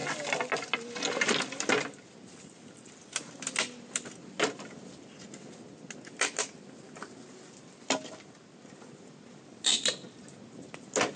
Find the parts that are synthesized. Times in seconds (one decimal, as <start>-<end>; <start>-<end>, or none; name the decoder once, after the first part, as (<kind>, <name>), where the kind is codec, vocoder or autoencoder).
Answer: none